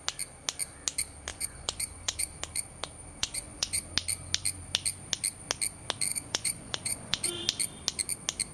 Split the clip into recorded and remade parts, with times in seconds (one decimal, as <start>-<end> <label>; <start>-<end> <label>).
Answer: 0.0-1.3 recorded; 1.3-2.4 remade; 2.4-3.2 recorded; 3.2-3.8 remade; 3.8-6.1 recorded; 6.1-7.3 remade; 7.3-8.5 recorded